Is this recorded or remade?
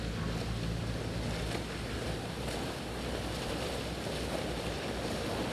recorded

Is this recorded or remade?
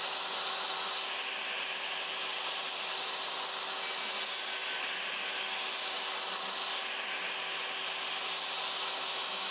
recorded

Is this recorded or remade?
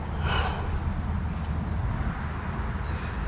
recorded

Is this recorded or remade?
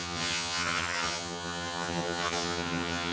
remade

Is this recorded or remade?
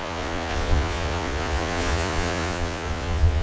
remade